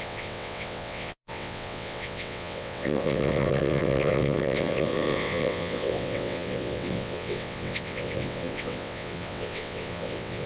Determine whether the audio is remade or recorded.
remade